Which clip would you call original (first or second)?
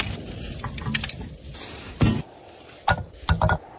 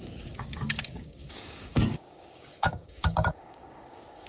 first